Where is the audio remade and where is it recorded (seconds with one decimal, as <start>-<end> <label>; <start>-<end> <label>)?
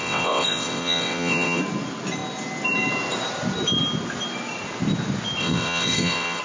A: 0.0-1.6 remade; 1.6-5.4 recorded; 5.4-6.4 remade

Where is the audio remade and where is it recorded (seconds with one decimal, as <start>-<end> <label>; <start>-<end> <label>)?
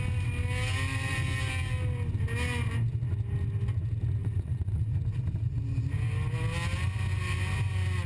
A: 0.0-4.2 recorded; 4.2-4.9 remade; 4.9-8.1 recorded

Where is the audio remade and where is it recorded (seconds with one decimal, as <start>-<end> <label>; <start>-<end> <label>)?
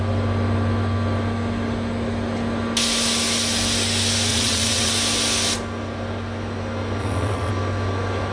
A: 0.0-4.3 recorded; 4.3-4.9 remade; 4.9-7.0 recorded; 7.0-7.5 remade; 7.5-8.3 recorded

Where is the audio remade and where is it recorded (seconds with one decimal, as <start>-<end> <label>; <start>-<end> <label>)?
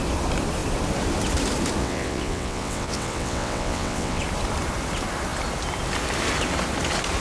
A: 0.0-1.8 recorded; 1.8-4.2 remade; 4.2-7.2 recorded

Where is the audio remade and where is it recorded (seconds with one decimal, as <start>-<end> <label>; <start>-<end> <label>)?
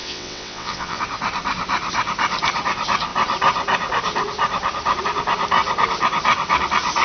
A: 0.0-1.0 remade; 1.0-7.0 recorded